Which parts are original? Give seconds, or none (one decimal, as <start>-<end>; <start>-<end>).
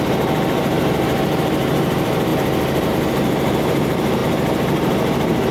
2.3-2.9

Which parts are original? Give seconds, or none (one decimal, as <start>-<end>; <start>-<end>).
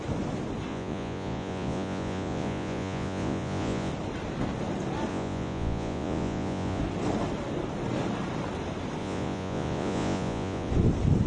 0.0-0.7; 3.9-5.1; 6.8-9.0; 10.7-11.3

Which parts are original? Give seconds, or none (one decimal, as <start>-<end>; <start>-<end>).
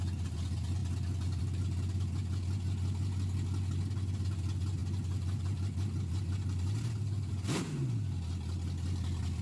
0.0-9.4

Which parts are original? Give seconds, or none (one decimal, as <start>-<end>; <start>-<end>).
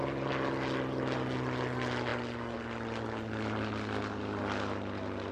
0.0-5.3